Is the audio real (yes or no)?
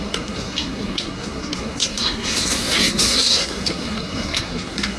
no